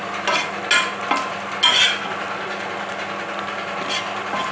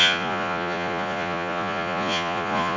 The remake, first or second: second